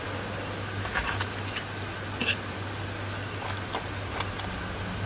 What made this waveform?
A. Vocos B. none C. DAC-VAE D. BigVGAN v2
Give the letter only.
B